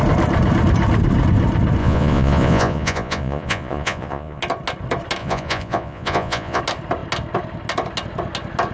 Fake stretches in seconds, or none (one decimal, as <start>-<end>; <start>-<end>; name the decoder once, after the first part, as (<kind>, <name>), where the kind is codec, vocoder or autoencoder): 1.8-4.4 (vocoder, Vocos); 5.2-6.6